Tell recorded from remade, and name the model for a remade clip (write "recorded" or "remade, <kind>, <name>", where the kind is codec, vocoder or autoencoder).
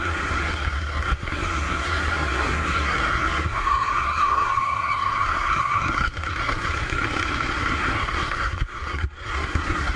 remade, codec, SNAC